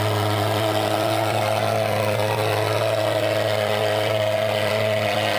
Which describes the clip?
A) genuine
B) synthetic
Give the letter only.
A